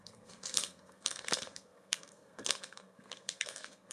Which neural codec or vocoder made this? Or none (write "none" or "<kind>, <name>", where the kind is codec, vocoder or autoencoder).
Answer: codec, SNAC